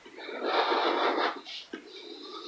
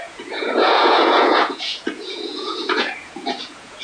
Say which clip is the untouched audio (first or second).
first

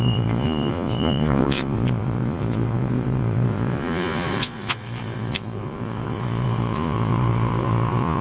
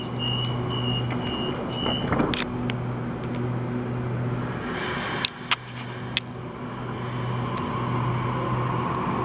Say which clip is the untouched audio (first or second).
second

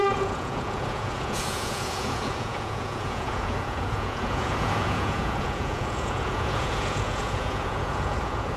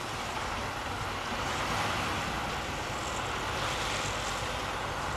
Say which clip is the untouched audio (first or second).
second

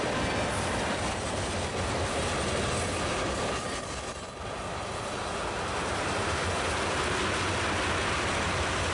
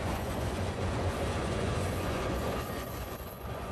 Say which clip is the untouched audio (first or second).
first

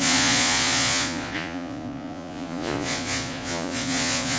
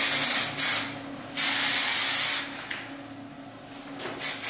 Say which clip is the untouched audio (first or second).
second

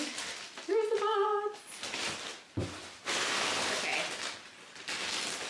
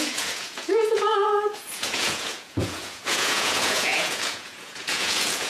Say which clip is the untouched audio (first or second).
first